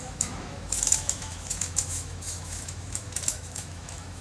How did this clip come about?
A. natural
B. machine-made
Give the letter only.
B